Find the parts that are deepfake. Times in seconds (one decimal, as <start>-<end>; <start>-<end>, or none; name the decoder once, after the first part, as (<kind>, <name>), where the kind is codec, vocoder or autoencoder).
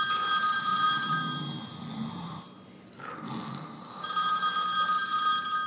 0.7-2.4 (vocoder, BigVGAN v2)